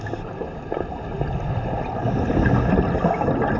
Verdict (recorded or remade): recorded